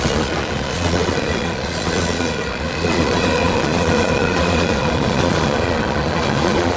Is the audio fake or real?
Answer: fake